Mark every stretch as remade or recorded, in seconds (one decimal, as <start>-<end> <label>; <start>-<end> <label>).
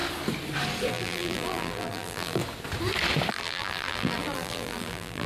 0.0-0.9 recorded; 0.9-2.4 remade; 2.4-3.3 recorded; 3.3-5.3 remade